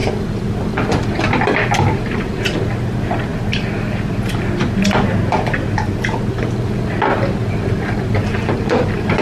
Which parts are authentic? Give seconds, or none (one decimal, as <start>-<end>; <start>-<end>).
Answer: 0.0-9.2